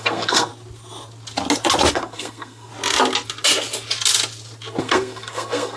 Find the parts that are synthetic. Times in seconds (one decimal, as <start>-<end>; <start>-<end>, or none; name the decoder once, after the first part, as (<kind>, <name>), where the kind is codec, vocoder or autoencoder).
0.0-0.5 (codec, SNAC); 1.9-2.7; 4.8-5.8